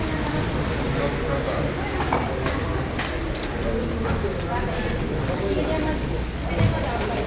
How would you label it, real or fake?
real